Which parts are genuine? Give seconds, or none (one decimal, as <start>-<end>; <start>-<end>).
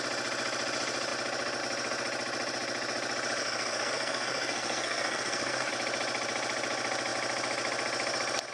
0.0-3.4; 5.7-8.5